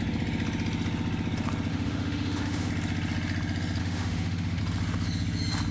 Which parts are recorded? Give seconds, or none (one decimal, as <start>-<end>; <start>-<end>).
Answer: 0.0-1.7; 2.7-3.8; 4.6-5.7